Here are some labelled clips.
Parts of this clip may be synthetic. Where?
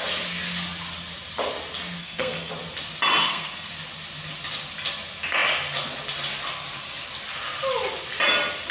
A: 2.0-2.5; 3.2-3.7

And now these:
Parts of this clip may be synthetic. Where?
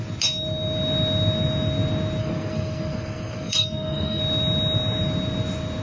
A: 2.2-4.2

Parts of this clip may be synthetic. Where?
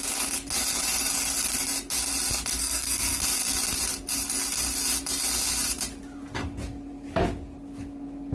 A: 2.6-3.2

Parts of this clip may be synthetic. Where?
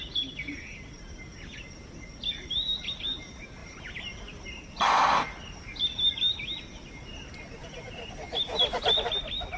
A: none